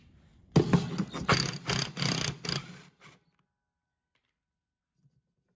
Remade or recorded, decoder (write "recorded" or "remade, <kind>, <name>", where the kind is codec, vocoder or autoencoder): recorded